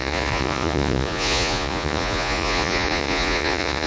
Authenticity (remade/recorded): remade